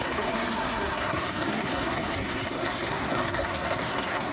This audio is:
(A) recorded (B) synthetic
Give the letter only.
B